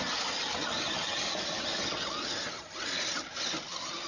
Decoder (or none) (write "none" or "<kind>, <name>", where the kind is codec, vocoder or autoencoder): none